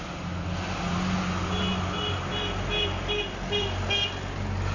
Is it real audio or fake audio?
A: real